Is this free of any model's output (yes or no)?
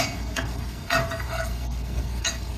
no